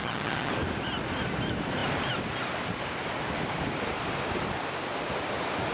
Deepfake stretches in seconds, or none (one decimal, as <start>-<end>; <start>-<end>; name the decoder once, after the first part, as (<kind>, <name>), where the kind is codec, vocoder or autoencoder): 0.0-0.5 (vocoder, HiFi-GAN)